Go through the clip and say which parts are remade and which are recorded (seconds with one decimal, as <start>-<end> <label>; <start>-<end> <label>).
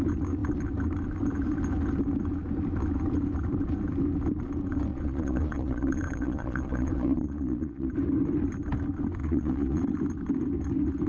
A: 0.0-4.9 recorded; 4.9-7.9 remade; 7.9-9.2 recorded; 9.2-9.8 remade; 9.8-11.1 recorded